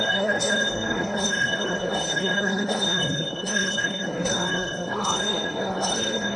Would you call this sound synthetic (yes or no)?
yes